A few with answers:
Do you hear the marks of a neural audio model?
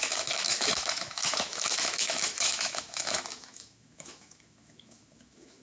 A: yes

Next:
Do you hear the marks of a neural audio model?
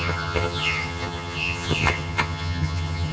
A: yes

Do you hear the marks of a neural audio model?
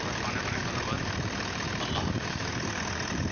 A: yes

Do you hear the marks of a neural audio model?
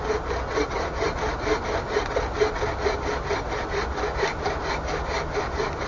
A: no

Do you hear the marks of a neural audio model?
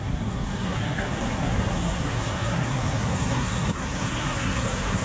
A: yes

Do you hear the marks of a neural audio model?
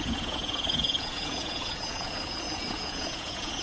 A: yes